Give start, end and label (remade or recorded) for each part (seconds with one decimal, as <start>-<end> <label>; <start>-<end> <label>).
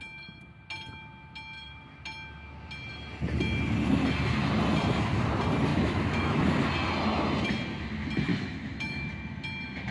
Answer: 0.0-5.7 recorded; 5.7-6.4 remade; 6.4-8.3 recorded; 8.3-9.1 remade; 9.1-9.9 recorded